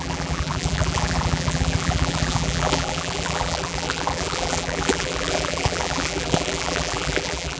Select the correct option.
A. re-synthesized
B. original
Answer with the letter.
A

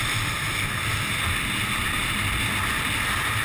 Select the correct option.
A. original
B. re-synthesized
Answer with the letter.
A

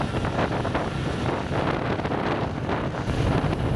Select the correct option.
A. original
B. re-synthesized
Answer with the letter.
A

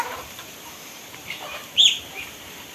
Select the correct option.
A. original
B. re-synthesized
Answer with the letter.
B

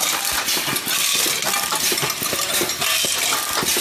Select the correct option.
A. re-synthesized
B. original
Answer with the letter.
B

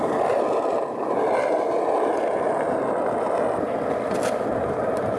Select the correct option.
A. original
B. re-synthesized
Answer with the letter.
A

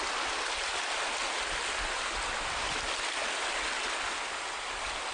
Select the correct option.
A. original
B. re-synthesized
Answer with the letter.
A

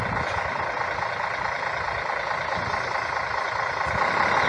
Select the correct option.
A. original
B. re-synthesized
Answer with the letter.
A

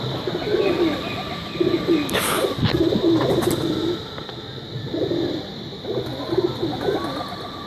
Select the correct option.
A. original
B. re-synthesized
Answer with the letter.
A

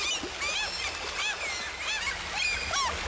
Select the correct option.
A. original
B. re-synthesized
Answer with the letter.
A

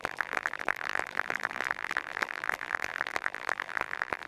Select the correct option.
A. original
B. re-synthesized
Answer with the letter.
B